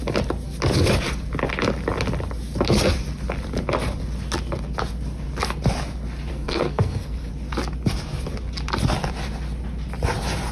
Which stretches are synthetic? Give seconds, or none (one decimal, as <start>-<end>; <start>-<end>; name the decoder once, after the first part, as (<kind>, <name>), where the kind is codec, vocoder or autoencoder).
6.3-7.3 (codec, SNAC)